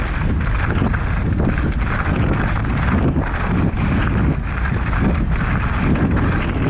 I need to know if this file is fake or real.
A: real